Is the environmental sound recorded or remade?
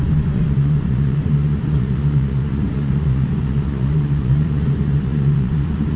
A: remade